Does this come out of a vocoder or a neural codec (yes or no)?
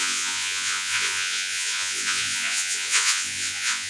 yes